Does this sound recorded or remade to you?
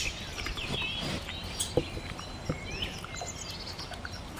recorded